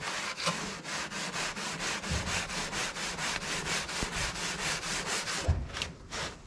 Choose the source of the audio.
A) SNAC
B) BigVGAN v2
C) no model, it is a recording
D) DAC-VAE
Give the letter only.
B